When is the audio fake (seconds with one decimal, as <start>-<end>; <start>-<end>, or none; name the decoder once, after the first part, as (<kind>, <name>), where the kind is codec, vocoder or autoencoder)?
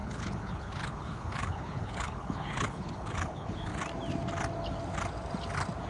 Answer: 0.0-3.7 (codec, HILCodec)